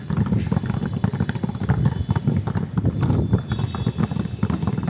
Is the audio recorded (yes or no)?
yes